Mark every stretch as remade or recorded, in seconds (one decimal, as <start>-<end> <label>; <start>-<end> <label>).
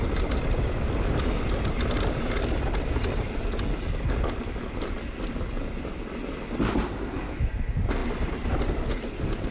0.0-9.5 recorded